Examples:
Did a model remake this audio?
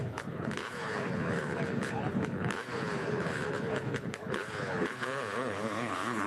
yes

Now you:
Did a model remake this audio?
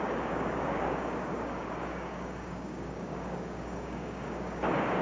yes